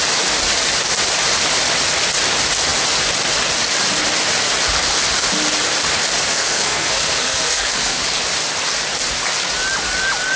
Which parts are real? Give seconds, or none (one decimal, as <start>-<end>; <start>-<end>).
0.0-6.3; 8.0-10.4

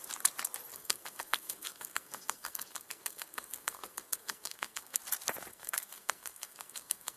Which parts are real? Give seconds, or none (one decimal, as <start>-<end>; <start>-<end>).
0.0-0.7; 5.0-5.5

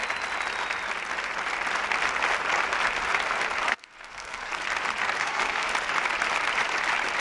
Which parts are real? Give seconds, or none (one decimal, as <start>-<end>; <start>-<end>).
0.0-3.7; 4.5-5.2; 5.7-7.2

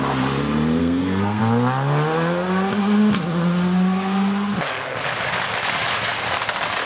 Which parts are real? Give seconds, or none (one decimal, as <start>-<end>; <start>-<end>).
0.0-0.8; 1.4-6.9

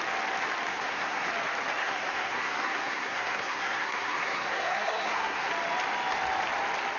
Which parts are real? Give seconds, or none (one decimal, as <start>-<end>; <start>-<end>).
0.0-0.7; 1.3-1.8; 5.5-7.0

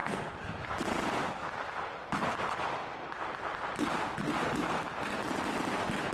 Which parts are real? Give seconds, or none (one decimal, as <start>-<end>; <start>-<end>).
0.7-6.1

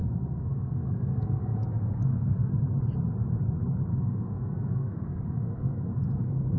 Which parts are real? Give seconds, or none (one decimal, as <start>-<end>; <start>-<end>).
2.5-3.9

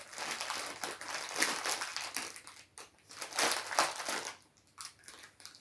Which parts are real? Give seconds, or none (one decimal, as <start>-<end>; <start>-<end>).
0.0-5.6